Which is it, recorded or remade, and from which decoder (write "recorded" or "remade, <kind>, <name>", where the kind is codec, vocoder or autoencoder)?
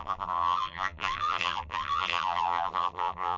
remade, vocoder, BigVGAN v2